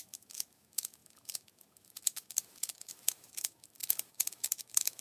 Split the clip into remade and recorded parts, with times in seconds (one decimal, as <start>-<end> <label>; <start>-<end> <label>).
0.0-5.0 remade